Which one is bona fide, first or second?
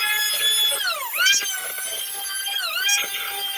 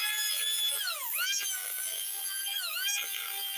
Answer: first